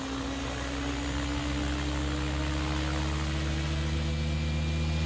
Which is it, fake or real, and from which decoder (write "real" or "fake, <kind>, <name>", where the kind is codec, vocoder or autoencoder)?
real